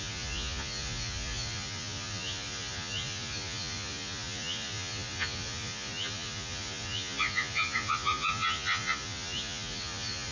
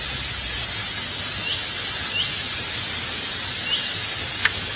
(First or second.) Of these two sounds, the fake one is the first